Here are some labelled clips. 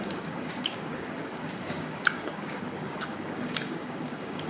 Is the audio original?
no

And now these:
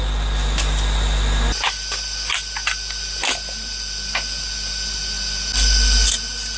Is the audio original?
yes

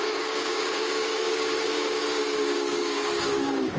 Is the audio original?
no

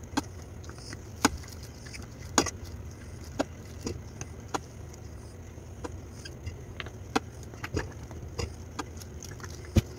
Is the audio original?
yes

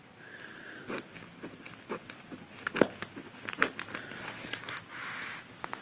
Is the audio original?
yes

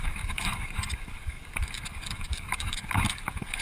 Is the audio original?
no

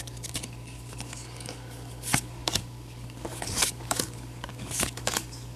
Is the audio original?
no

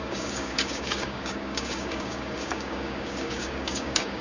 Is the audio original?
no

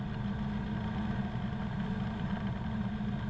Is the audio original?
yes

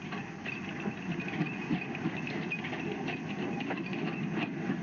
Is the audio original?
yes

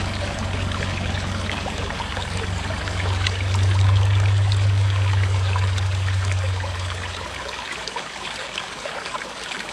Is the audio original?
no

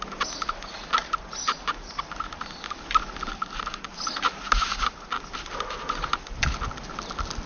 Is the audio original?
yes